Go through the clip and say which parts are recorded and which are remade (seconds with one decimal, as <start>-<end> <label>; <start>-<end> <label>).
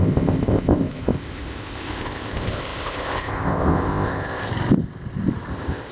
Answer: 0.0-4.5 remade; 4.5-5.5 recorded; 5.5-5.9 remade